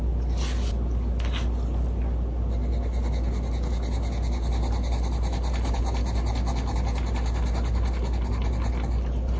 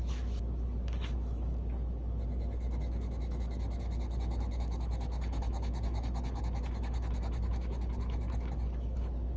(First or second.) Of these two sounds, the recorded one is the first